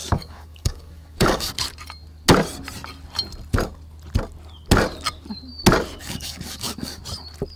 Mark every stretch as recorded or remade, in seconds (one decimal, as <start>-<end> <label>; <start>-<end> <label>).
0.0-1.5 remade; 1.5-6.0 recorded; 6.0-7.0 remade; 7.0-7.6 recorded